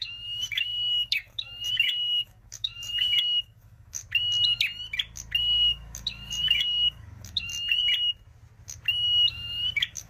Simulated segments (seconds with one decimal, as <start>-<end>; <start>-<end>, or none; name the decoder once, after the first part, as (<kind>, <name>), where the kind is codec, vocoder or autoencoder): 0.0-4.0 (codec, DAC); 5.4-7.5; 9.3-10.1